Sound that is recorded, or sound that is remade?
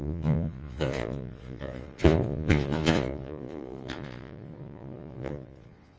remade